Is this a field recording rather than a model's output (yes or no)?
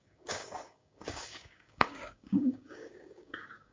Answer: no